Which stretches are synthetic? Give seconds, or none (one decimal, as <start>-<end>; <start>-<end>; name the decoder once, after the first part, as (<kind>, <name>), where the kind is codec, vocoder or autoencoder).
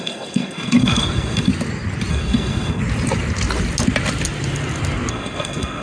0.0-1.5 (codec, SNAC); 2.1-2.8; 5.1-5.8